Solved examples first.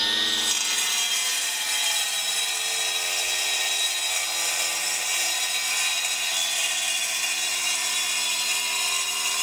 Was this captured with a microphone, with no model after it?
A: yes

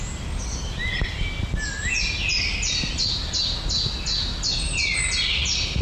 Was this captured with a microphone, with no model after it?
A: yes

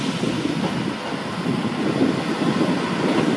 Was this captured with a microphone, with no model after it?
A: yes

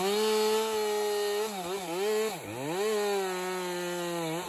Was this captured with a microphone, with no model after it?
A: yes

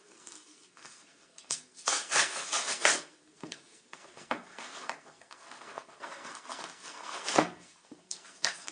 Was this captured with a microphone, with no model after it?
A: no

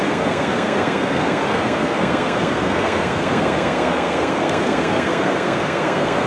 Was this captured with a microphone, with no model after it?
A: no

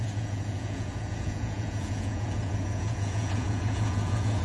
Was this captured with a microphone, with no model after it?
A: no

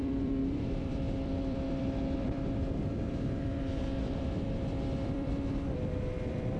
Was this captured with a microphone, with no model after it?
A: no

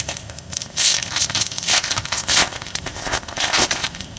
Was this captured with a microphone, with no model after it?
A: no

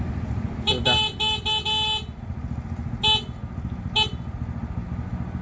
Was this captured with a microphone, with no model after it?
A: yes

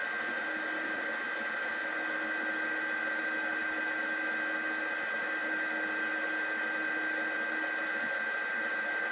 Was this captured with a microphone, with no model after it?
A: yes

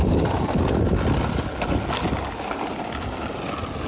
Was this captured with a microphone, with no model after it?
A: yes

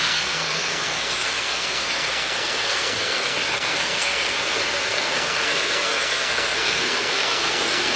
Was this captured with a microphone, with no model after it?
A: no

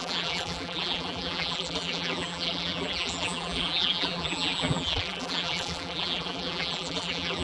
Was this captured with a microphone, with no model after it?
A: no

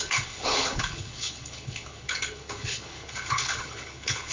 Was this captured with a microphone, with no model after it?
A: no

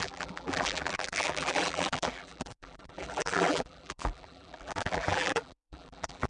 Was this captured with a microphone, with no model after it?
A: no